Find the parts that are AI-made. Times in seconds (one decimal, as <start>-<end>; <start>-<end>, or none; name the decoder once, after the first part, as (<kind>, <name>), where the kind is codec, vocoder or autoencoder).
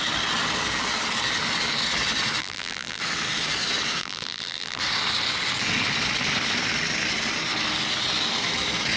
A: 2.4-3.0 (vocoder, BigVGAN v2); 4.0-4.8